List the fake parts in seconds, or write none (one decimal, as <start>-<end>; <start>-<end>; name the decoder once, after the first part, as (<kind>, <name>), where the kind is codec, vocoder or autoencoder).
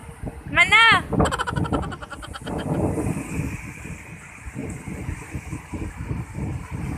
none